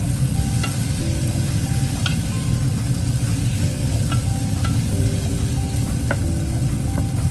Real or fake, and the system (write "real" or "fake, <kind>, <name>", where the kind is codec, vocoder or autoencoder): real